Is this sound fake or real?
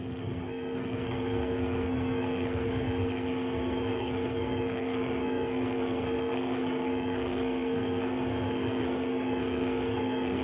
fake